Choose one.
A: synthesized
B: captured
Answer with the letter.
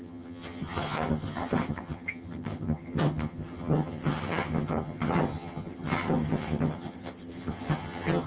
A